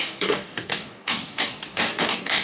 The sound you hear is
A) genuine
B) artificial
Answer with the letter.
B